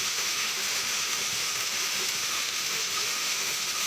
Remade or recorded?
remade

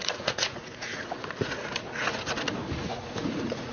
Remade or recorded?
remade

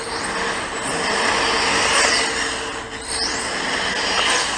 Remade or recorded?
recorded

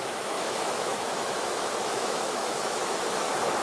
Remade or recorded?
remade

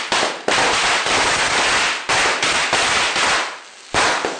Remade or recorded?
recorded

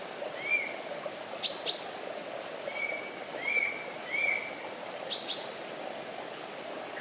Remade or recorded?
recorded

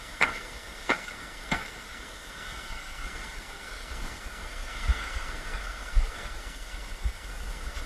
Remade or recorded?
remade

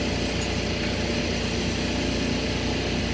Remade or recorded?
recorded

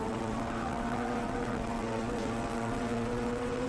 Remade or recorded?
remade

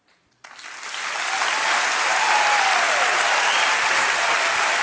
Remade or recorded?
recorded